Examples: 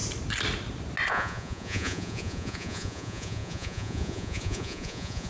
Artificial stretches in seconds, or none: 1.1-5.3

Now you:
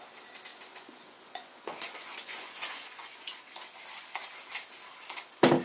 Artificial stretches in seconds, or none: 0.5-3.4

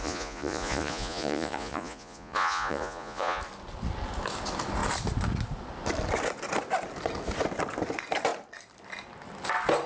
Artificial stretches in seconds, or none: 0.0-3.4

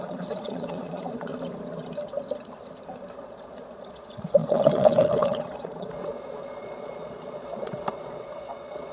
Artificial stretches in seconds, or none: 0.0-1.3; 3.2-8.9

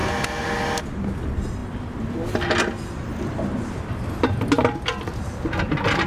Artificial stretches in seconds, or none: none

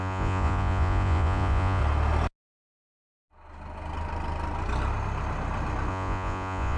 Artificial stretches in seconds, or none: 0.0-1.8; 5.9-6.8